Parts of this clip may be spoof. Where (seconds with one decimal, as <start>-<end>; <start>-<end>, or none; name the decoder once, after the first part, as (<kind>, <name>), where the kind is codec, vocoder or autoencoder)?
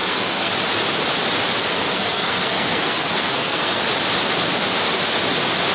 0.0-0.5 (codec, SNAC); 1.6-3.8